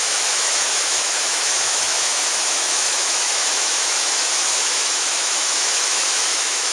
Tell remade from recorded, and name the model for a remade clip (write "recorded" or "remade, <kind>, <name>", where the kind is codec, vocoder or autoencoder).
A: remade, autoencoder, DAC-VAE